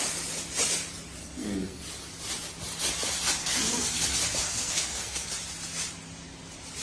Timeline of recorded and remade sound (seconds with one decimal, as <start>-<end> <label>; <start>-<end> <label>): 0.0-1.2 recorded; 1.2-1.8 remade; 1.8-3.4 recorded; 3.4-5.3 remade; 5.3-6.8 recorded